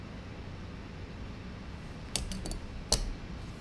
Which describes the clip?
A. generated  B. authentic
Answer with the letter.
B